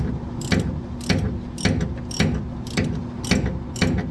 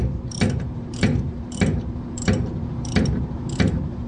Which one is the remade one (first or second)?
second